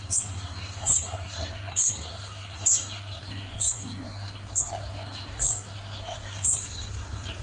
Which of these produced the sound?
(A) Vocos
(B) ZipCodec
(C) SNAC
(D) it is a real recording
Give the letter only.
C